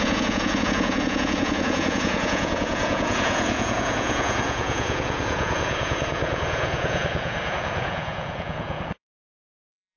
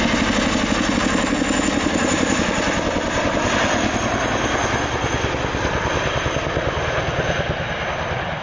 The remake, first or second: first